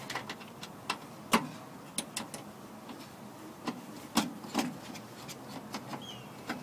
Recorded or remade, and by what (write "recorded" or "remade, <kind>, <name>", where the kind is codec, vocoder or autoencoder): recorded